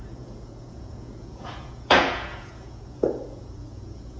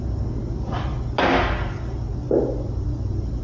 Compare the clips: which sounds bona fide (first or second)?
second